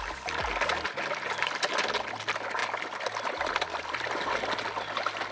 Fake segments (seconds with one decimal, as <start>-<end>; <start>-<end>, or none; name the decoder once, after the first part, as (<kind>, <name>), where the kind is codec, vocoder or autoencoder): none